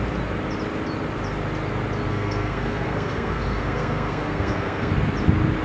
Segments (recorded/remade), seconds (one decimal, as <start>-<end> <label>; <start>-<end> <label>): 0.0-2.1 recorded; 2.1-4.9 remade; 4.9-5.6 recorded